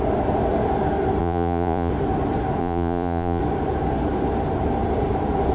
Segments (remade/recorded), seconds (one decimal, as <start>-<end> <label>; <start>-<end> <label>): 0.0-1.2 recorded; 1.2-1.9 remade; 1.9-2.6 recorded; 2.6-3.4 remade; 3.4-5.5 recorded